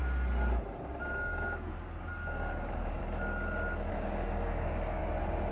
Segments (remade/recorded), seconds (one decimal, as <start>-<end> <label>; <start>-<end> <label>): 0.0-0.8 recorded; 0.8-3.0 remade; 3.0-3.9 recorded; 3.9-5.0 remade; 5.0-5.5 recorded